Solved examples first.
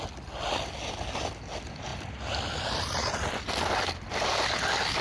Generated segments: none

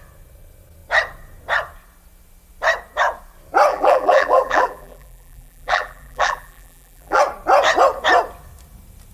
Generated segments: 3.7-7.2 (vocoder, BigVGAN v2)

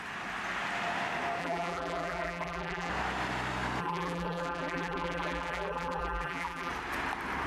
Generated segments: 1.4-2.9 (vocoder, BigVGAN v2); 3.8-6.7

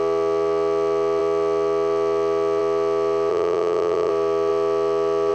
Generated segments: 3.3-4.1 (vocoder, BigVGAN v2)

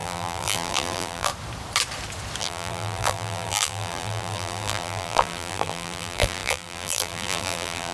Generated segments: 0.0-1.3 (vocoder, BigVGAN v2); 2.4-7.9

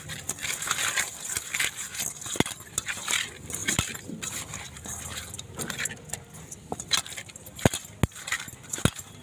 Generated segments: 3.6-5.6 (vocoder, BigVGAN v2)

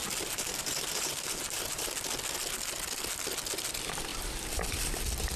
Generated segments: 0.0-1.9 (vocoder, BigVGAN v2); 4.1-5.4

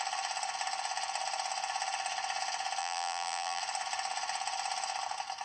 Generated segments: 2.8-3.6 (vocoder, BigVGAN v2)